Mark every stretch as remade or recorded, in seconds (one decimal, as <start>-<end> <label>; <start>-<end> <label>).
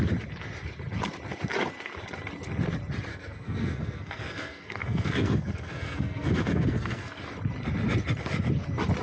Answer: 0.0-3.1 recorded; 3.1-7.2 remade; 7.2-9.0 recorded